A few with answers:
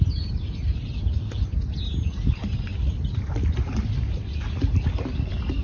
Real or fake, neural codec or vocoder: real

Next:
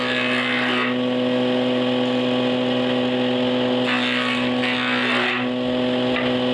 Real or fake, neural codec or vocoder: real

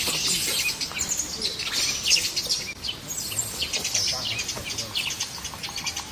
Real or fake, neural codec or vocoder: real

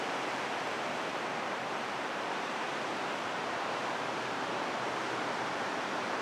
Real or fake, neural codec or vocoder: fake, vocoder, BigVGAN v2